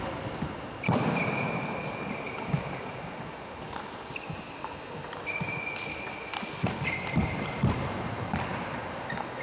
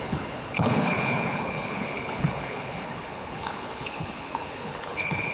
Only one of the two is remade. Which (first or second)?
second